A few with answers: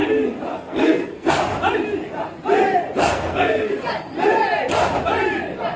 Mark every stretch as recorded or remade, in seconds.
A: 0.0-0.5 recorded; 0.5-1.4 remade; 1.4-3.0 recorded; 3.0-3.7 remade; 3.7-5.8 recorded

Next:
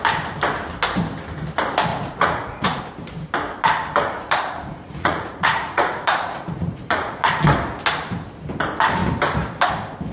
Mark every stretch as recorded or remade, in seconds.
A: 0.0-1.9 recorded; 1.9-2.8 remade; 2.8-4.0 recorded; 4.0-7.3 remade; 7.3-10.1 recorded

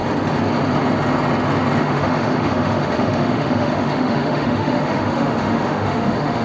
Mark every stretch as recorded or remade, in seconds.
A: 0.0-1.8 recorded; 1.8-6.4 remade

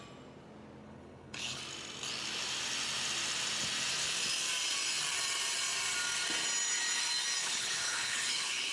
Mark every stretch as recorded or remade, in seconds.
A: 0.0-0.8 recorded; 0.8-1.6 remade; 1.6-7.4 recorded; 7.4-8.7 remade

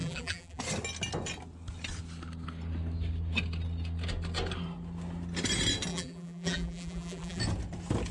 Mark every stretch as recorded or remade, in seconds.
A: 0.0-0.6 remade; 0.6-5.9 recorded; 5.9-7.4 remade; 7.4-8.1 recorded

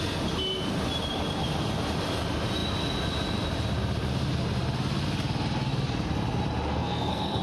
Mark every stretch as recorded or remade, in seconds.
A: 0.0-6.7 recorded; 6.7-7.4 remade

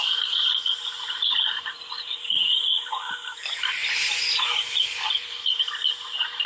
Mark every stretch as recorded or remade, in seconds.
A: 0.0-6.5 recorded